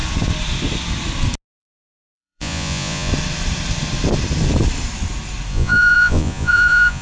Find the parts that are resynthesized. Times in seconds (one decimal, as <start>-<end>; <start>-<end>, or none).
1.6-3.1; 5.5-7.0